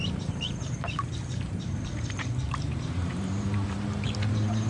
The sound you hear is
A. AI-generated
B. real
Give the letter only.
A